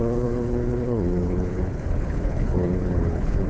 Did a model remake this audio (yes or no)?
yes